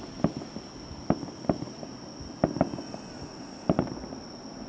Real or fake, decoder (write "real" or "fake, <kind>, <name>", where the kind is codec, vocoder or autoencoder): real